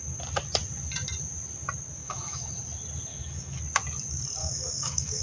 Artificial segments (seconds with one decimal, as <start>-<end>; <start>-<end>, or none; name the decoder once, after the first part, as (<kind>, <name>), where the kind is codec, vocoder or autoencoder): 2.0-2.5 (autoencoder, DAC-VAE); 3.1-3.6; 4.4-5.2